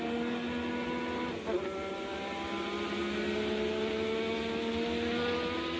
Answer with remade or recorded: recorded